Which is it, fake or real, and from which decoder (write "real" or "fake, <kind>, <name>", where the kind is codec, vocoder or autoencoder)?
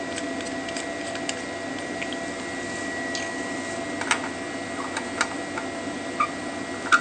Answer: real